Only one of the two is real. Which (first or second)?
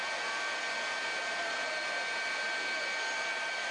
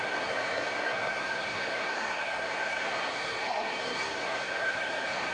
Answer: first